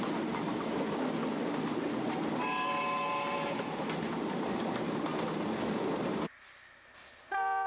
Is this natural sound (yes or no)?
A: yes